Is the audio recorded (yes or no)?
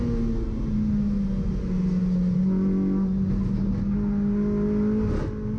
yes